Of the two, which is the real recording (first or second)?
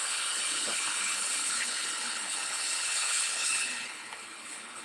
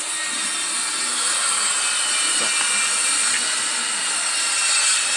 second